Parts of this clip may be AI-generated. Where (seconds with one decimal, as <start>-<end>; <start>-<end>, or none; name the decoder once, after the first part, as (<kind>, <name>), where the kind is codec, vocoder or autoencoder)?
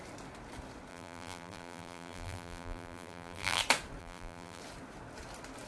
0.9-3.6 (vocoder, BigVGAN v2); 4.0-4.6